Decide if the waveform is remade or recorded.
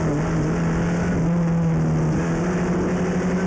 recorded